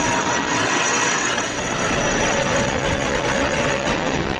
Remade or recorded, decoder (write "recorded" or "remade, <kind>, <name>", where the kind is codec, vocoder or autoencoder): remade, vocoder, WaveNeXt